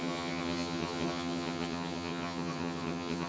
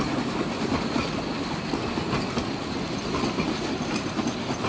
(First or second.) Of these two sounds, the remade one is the first